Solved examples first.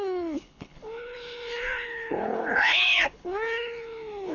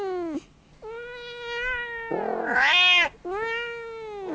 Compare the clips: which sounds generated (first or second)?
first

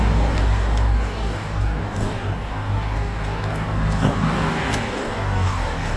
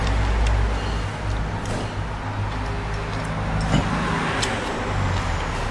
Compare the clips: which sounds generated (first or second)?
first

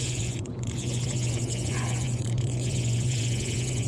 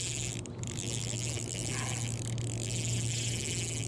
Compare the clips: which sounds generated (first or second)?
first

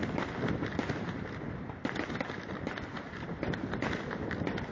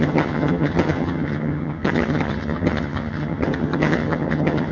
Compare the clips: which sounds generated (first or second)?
second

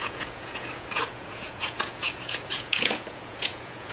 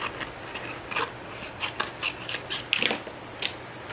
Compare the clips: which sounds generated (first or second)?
first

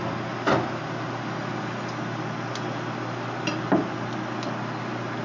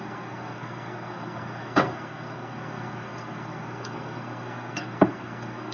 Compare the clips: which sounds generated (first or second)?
second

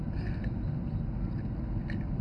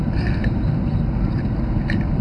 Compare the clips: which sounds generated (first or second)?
second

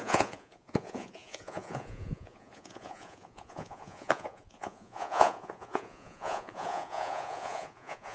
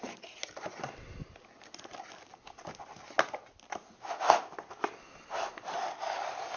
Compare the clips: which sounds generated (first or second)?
first